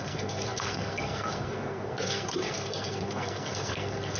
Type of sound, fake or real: fake